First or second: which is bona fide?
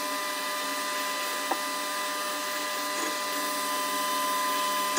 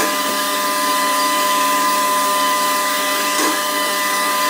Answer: first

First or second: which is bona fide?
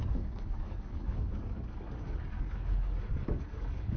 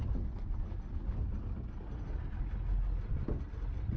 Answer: second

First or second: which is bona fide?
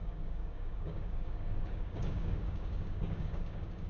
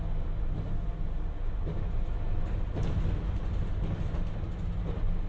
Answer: second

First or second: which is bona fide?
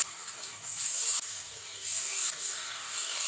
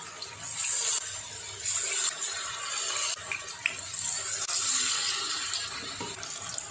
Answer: second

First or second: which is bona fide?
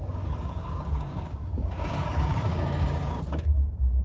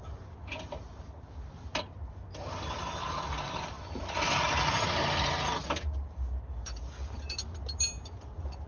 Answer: second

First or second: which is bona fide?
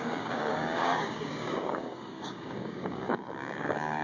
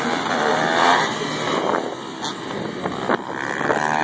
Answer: second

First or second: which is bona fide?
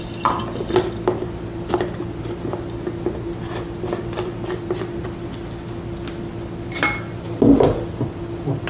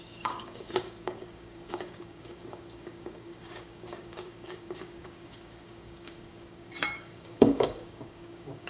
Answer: first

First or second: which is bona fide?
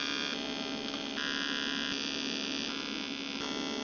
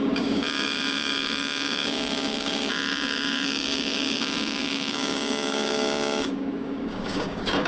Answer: first